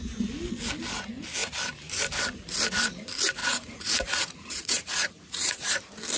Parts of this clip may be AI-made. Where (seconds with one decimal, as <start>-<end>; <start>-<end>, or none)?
3.4-5.8